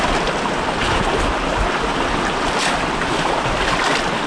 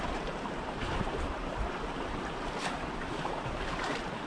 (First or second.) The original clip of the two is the first